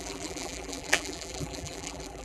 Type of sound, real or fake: fake